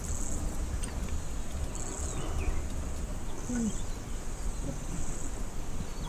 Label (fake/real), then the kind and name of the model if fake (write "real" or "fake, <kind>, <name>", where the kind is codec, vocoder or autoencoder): real